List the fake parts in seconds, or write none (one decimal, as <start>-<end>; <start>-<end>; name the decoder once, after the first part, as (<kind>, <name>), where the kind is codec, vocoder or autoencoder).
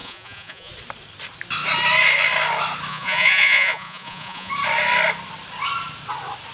0.0-0.7 (vocoder, Vocos); 2.9-4.5